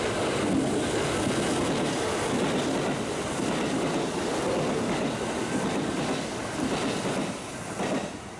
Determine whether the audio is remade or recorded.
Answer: recorded